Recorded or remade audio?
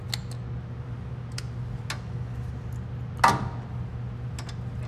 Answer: recorded